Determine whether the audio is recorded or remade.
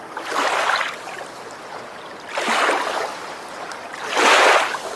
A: recorded